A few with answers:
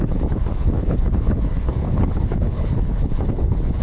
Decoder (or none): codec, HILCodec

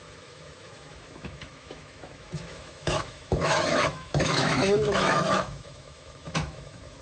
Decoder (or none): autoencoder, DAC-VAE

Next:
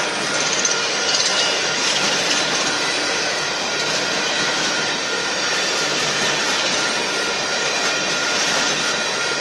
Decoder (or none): vocoder, BigVGAN v2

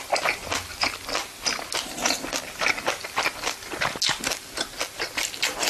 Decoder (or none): none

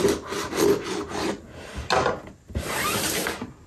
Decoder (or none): none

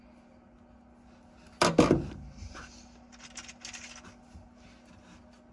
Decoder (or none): none